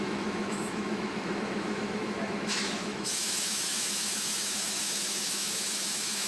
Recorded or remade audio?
remade